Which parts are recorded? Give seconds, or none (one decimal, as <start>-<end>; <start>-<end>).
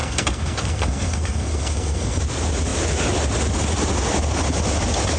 2.2-5.2